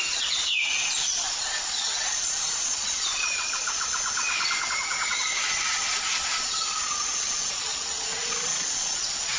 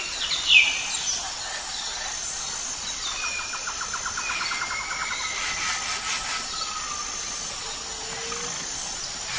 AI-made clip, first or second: first